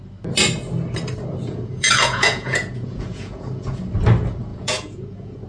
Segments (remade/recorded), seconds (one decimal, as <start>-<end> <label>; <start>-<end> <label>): 0.0-1.4 recorded; 1.4-3.8 remade; 3.8-4.5 recorded; 4.5-5.5 remade